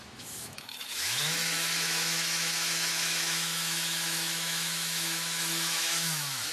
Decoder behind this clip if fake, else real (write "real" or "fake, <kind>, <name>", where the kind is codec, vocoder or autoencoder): fake, autoencoder, DAC-VAE